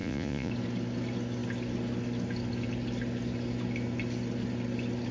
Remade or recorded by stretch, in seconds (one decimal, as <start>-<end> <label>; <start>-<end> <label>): 0.0-0.5 remade; 0.5-5.1 recorded